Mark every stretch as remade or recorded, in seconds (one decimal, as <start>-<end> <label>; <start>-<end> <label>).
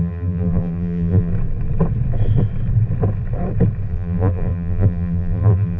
0.0-1.3 remade; 1.3-3.9 recorded; 3.9-5.8 remade